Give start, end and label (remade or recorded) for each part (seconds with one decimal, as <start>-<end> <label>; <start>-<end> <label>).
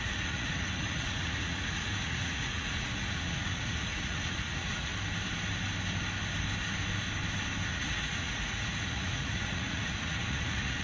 0.0-4.9 remade; 4.9-7.7 recorded; 7.7-10.8 remade